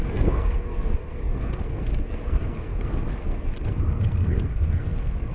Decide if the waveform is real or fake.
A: fake